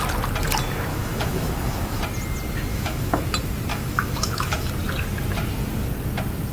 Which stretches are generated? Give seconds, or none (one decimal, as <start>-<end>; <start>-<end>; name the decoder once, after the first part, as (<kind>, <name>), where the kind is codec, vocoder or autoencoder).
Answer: 0.9-2.0 (autoencoder, DAC-VAE); 2.7-3.2; 3.7-4.7